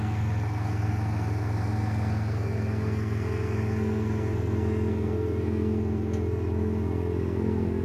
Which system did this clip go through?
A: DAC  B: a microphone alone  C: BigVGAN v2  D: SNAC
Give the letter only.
D